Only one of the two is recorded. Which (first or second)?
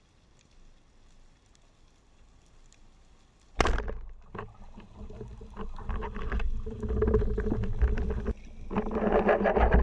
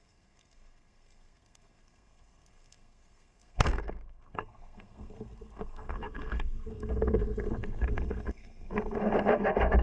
first